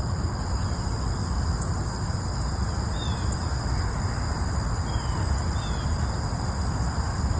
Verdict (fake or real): real